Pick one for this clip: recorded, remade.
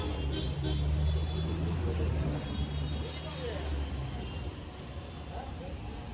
recorded